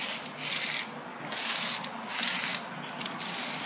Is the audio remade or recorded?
recorded